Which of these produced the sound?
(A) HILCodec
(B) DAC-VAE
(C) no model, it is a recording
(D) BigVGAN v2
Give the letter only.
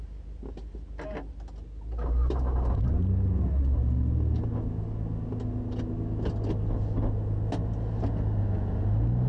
C